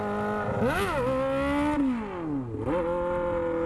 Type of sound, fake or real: real